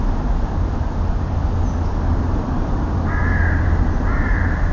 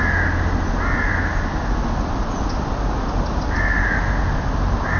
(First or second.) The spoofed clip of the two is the first